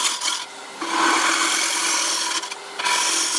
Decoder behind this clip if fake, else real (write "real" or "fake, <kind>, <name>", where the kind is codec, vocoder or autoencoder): real